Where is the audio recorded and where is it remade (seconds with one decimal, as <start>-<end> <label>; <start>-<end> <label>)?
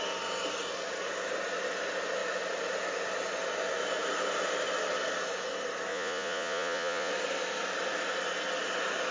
0.0-5.9 recorded; 5.9-7.1 remade; 7.1-9.1 recorded